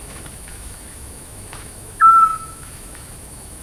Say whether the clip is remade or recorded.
remade